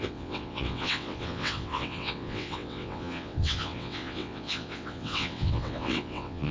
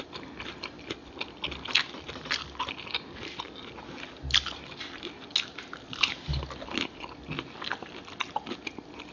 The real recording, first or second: second